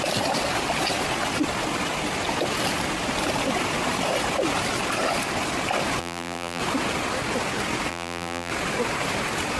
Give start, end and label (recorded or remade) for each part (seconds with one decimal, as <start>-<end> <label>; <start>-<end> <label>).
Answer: 0.0-6.0 recorded; 6.0-6.6 remade; 6.6-7.9 recorded; 7.9-8.5 remade; 8.5-9.6 recorded